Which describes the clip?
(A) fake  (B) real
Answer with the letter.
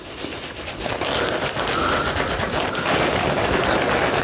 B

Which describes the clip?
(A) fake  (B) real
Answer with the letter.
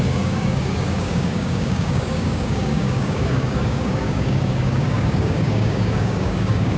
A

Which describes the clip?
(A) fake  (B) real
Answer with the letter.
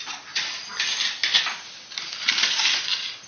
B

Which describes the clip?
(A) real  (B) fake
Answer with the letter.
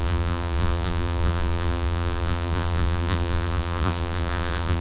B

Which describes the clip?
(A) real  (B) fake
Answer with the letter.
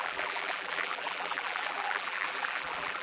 B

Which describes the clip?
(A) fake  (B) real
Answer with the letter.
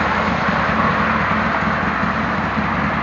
B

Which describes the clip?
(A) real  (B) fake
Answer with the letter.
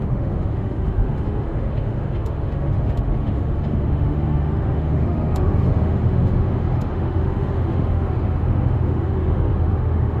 B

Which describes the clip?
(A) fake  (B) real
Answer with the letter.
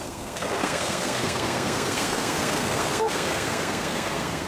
A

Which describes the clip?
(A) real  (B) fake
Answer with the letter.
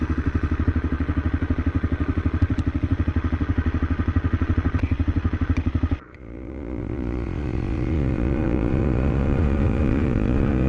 B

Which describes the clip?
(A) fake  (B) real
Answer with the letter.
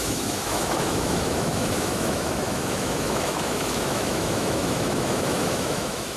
A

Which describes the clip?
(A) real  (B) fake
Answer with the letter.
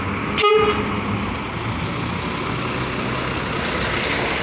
A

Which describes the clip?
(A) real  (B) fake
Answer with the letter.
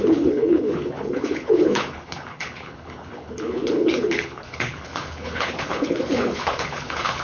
B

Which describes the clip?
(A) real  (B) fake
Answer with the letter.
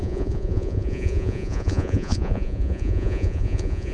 B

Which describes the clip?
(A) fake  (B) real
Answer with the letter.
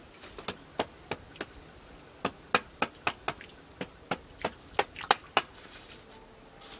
B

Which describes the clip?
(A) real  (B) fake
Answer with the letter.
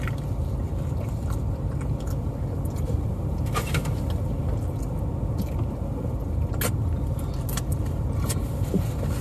A